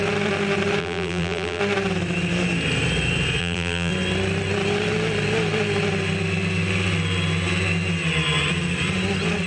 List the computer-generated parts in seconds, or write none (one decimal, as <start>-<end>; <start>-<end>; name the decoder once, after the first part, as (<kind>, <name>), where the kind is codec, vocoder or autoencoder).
0.8-1.6 (vocoder, BigVGAN v2); 3.4-3.9